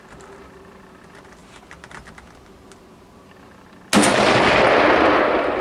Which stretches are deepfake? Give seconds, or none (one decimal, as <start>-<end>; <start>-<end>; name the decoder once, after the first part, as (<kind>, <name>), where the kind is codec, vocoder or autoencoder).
none